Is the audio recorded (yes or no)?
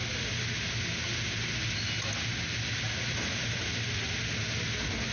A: yes